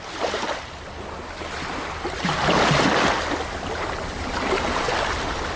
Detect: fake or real real